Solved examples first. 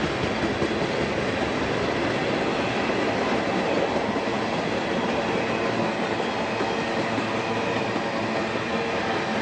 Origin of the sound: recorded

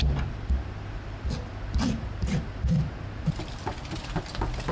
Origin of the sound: recorded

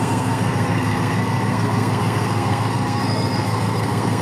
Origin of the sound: remade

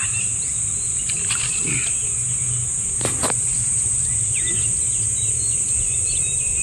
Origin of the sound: recorded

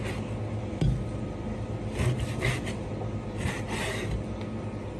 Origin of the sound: recorded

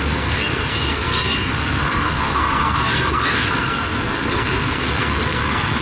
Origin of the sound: remade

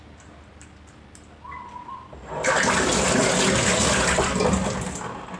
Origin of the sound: recorded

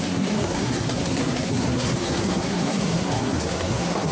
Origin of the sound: remade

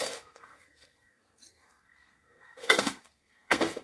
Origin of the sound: remade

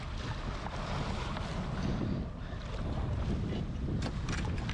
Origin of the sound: recorded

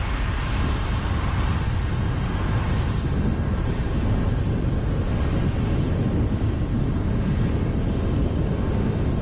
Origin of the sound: recorded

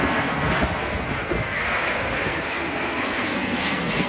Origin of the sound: remade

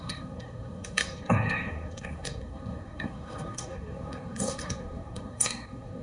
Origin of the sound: remade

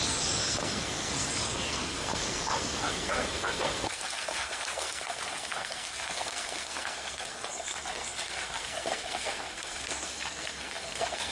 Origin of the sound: remade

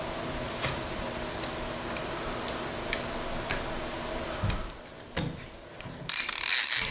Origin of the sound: recorded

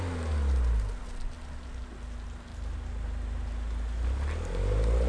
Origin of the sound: recorded